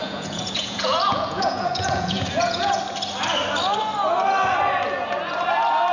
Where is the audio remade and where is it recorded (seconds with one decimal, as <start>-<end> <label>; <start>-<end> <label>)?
0.0-2.8 remade; 2.8-5.9 recorded